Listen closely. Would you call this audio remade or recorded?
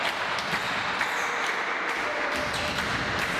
remade